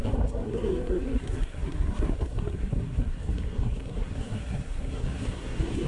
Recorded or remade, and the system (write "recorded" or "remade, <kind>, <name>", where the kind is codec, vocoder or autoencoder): remade, codec, SNAC